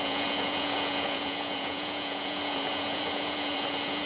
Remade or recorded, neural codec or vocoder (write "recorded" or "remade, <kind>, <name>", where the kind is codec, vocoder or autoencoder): remade, vocoder, Vocos